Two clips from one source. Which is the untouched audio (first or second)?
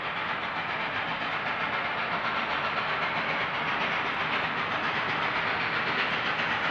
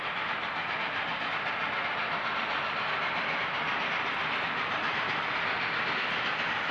first